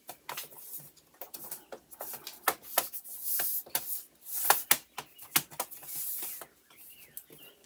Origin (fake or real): real